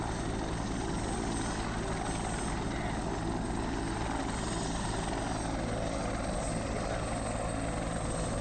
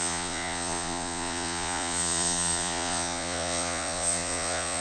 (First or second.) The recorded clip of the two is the first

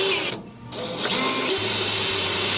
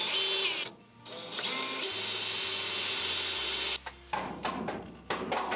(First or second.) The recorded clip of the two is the second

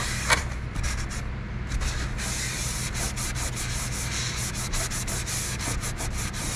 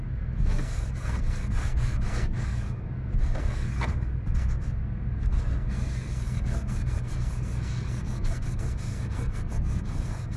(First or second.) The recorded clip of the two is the first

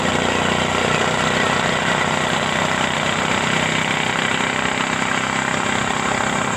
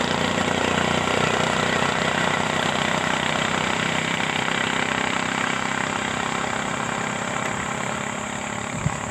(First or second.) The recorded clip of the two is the first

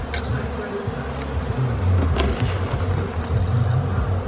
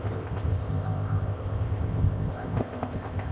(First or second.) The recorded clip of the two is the first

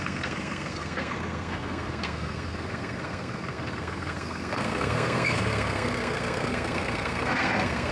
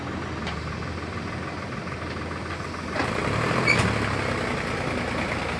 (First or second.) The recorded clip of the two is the second